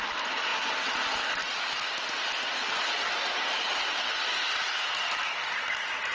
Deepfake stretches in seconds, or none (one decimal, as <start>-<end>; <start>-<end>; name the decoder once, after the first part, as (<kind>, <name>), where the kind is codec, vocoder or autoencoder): none